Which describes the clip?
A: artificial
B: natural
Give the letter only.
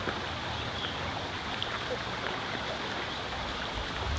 B